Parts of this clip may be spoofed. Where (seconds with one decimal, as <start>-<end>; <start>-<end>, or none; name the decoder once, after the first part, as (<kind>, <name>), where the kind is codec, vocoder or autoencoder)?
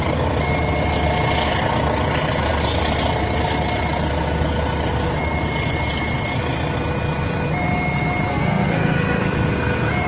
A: 8.3-9.2 (codec, SNAC)